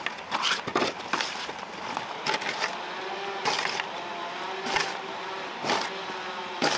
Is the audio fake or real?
real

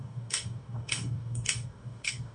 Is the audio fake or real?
fake